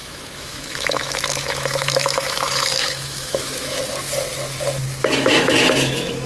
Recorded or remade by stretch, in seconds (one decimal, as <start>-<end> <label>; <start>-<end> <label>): 0.0-3.8 remade; 3.8-5.0 recorded; 5.0-6.3 remade